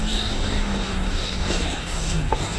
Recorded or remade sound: remade